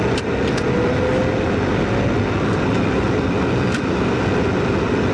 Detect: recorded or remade recorded